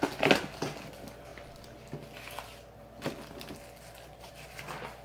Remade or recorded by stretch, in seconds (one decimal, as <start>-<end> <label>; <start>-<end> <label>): 0.0-5.0 recorded